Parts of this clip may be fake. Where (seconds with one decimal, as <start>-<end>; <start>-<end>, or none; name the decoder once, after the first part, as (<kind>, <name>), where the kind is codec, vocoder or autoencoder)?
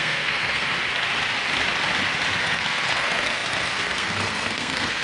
0.0-0.7 (codec, SNAC); 2.4-5.0